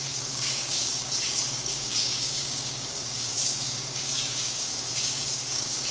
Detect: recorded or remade remade